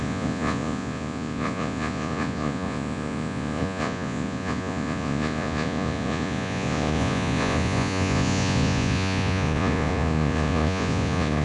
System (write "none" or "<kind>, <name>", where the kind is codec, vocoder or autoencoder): vocoder, Vocos